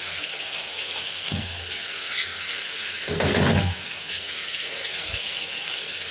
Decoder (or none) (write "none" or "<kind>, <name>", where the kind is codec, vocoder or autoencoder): codec, SNAC